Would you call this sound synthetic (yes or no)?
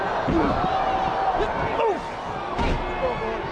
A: no